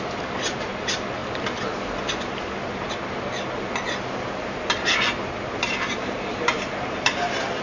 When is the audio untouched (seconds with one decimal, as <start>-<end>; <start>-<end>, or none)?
1.2-5.7